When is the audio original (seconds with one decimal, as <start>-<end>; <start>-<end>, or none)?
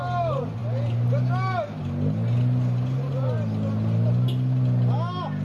0.0-5.4